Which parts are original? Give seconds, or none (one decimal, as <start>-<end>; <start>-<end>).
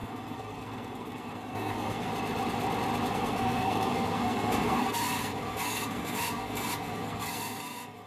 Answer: 2.1-3.1